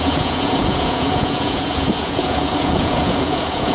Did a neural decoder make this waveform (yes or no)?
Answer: yes